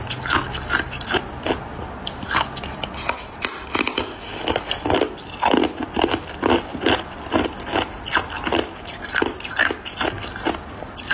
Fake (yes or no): no